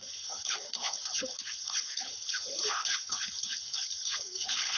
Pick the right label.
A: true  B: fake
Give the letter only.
B